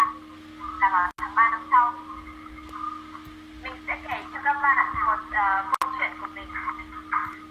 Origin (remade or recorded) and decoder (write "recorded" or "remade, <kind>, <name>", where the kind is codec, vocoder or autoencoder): recorded